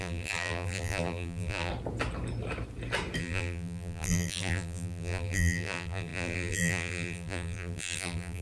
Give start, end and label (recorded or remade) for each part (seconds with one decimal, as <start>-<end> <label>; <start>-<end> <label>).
0.0-1.7 remade; 1.7-3.2 recorded; 3.2-8.4 remade